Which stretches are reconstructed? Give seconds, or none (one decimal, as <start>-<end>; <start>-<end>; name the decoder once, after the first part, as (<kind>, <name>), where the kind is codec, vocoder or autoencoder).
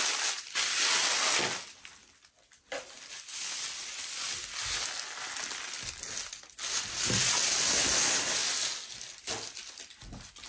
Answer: none